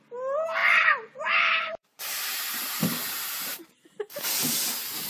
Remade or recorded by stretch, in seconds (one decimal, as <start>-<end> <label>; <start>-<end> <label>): 0.0-0.6 recorded; 0.6-3.7 remade; 3.7-5.1 recorded